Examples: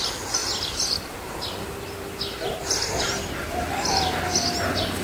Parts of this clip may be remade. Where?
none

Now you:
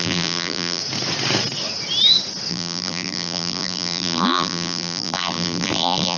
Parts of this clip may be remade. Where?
0.0-0.8 (vocoder, BigVGAN v2); 2.5-6.2

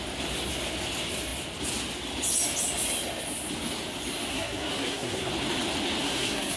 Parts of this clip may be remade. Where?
4.3-5.3 (codec, SNAC); 6.0-6.6

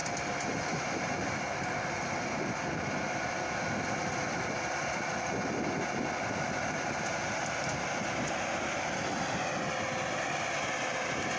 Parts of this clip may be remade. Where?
none

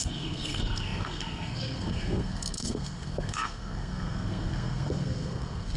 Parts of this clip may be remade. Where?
0.0-5.8 (codec, SNAC)